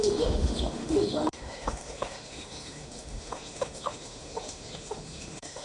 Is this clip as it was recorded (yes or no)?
no